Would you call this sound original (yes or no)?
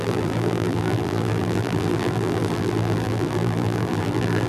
no